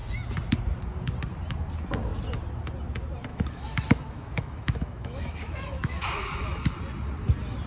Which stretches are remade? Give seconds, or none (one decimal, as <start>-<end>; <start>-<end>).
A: 3.3-6.8